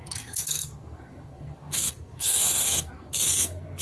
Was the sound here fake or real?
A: fake